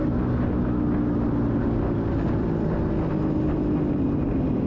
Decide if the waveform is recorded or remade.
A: recorded